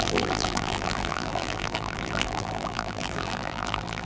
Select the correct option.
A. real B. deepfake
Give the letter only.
B